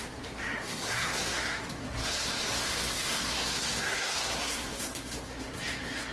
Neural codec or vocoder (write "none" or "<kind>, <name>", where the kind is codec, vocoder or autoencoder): codec, SNAC